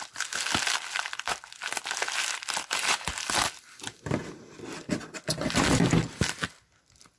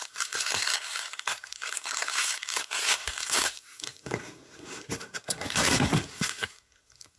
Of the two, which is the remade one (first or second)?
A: second